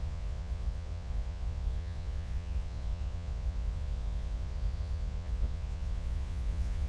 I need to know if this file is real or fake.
fake